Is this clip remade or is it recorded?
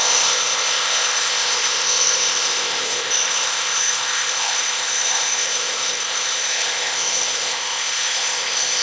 remade